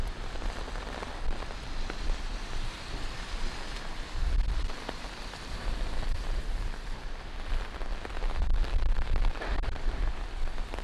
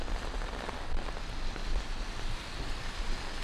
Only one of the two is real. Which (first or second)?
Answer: second